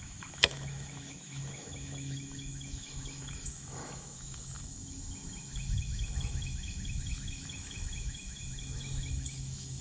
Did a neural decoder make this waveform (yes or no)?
yes